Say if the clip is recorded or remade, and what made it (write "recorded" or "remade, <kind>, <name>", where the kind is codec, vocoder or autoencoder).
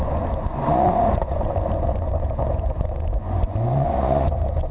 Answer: remade, vocoder, Vocos